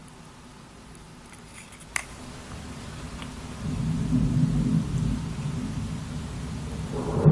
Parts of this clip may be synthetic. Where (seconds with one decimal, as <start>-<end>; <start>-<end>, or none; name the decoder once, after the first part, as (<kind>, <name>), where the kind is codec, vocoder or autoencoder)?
none